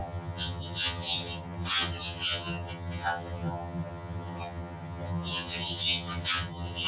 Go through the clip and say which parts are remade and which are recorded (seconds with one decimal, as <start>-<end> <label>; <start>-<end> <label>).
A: 0.0-6.9 remade